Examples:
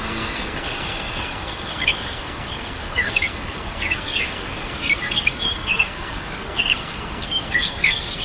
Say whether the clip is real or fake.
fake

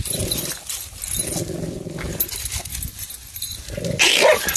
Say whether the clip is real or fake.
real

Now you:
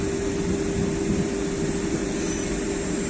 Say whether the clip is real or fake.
real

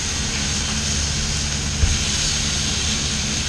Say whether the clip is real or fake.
real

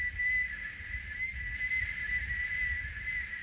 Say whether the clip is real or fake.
real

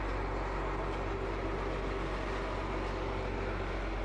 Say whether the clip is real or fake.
real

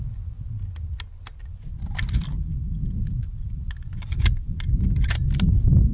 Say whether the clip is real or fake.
real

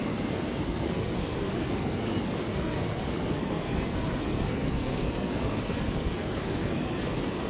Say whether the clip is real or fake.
fake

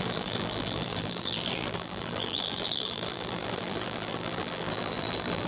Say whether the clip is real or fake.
fake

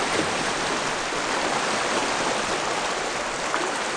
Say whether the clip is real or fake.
real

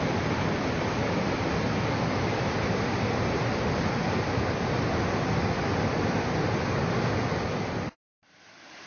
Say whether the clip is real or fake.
real